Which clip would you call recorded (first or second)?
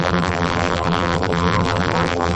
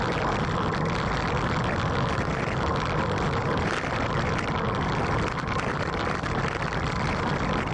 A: second